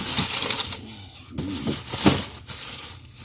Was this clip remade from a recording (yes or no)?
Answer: no